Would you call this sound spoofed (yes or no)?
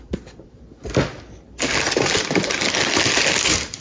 no